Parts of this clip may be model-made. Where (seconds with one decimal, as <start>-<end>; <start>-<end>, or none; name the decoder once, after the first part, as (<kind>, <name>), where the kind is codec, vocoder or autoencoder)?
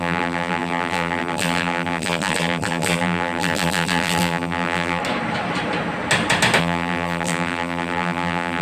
0.0-5.0 (vocoder, BigVGAN v2); 6.6-8.6